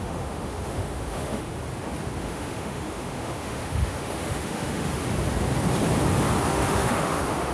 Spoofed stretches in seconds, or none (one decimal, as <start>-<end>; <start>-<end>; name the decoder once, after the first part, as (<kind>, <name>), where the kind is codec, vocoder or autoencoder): 0.0-1.5 (autoencoder, DAC-VAE); 2.2-5.0; 6.5-7.5